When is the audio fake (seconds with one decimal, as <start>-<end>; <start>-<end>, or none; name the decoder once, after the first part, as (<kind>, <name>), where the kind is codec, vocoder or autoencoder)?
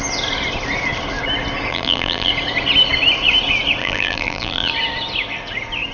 1.7-2.3 (vocoder, BigVGAN v2); 3.8-4.7